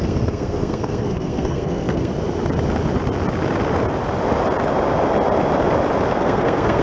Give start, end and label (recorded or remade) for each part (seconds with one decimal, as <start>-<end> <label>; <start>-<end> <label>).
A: 0.0-2.1 remade; 2.1-6.2 recorded; 6.2-6.8 remade